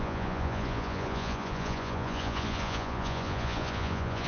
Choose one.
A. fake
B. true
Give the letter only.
A